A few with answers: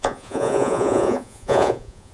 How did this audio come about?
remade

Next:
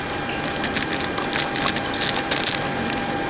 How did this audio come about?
recorded